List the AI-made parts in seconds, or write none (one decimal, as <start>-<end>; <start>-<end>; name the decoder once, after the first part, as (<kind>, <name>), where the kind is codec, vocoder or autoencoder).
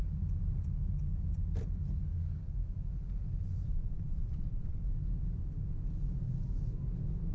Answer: 3.7-4.8 (vocoder, WaveNeXt)